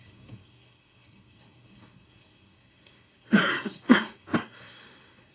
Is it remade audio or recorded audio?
remade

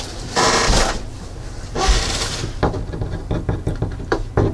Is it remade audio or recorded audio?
recorded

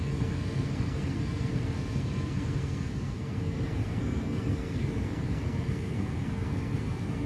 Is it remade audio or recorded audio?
remade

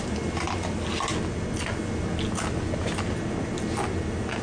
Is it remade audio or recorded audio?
recorded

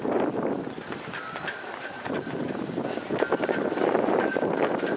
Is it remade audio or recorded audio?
recorded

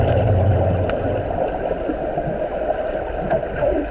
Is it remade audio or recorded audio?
recorded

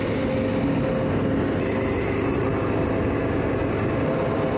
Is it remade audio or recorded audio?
recorded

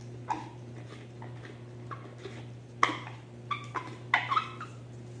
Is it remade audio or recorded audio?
recorded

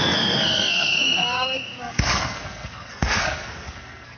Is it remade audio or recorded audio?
remade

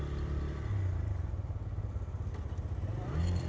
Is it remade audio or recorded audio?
recorded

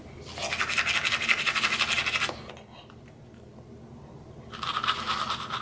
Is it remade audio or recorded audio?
recorded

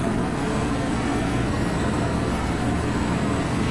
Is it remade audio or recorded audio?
remade